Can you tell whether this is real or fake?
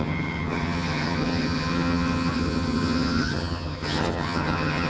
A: fake